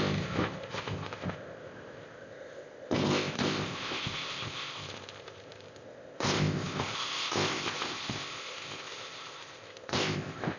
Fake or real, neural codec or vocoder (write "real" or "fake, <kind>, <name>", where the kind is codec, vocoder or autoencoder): fake, codec, ZipCodec